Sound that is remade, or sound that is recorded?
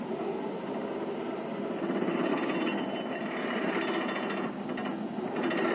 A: recorded